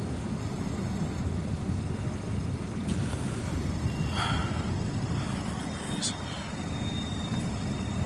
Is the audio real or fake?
real